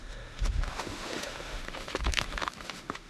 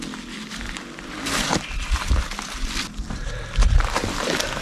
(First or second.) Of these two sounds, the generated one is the first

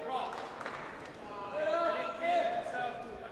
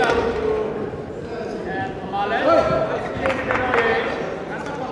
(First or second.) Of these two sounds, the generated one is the first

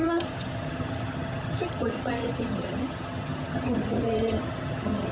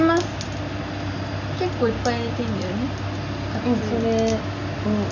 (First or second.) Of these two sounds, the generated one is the first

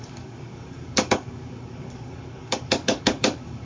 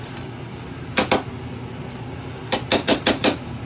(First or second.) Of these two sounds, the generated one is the first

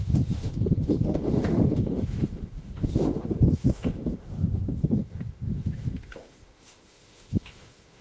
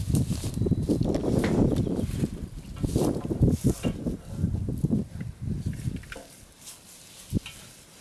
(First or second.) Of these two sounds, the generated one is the first